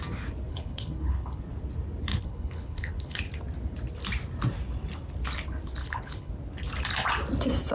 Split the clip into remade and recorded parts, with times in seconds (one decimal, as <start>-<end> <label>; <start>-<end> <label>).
0.0-0.5 recorded; 0.5-1.4 remade; 1.4-2.1 recorded; 2.1-3.2 remade; 3.2-5.8 recorded; 5.8-6.3 remade; 6.3-7.7 recorded